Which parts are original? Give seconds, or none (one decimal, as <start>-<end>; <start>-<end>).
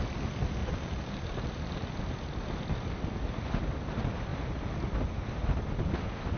0.0-0.6; 2.0-6.4